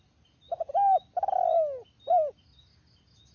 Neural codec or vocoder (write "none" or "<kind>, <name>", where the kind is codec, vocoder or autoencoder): none